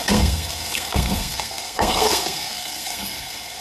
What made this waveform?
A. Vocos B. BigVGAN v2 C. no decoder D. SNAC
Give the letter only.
D